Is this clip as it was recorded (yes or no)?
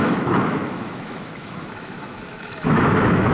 no